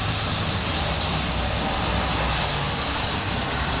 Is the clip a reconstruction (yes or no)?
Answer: no